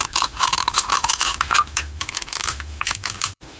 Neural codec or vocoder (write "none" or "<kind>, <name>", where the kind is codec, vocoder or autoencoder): autoencoder, DAC-VAE